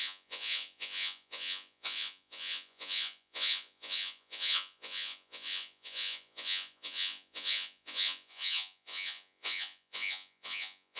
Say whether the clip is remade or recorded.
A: remade